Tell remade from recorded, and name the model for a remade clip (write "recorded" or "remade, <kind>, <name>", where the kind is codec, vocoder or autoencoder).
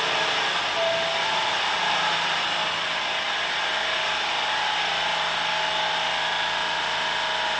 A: recorded